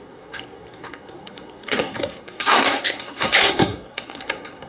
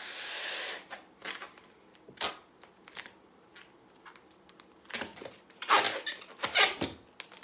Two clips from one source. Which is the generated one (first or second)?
first